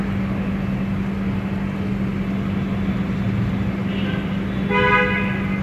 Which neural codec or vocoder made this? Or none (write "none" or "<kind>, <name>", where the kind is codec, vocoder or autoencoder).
none